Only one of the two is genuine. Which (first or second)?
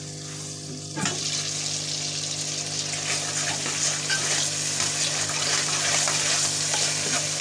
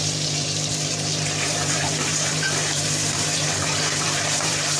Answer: first